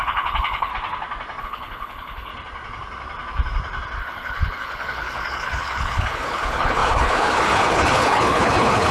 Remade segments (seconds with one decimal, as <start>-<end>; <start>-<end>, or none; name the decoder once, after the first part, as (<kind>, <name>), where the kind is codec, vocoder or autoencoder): 0.0-0.7 (codec, HILCodec); 1.4-2.3; 4.0-8.9